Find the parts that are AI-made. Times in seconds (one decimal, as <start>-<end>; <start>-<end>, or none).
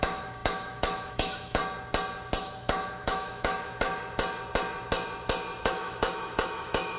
0.0-1.6; 2.4-3.9; 5.6-7.0